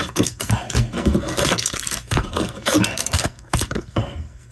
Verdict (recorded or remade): remade